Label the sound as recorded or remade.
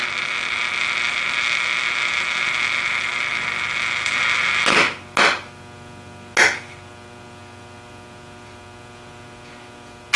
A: recorded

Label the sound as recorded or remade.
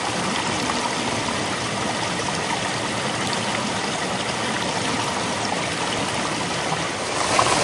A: remade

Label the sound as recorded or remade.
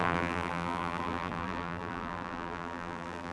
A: remade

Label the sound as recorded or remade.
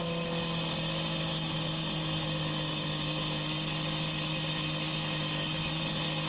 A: recorded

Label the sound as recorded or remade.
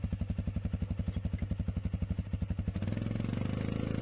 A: recorded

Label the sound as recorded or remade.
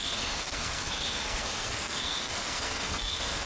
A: remade